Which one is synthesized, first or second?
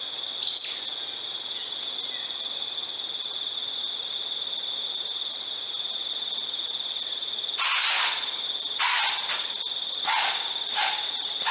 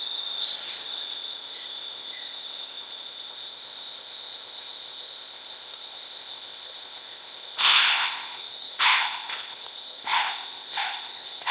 second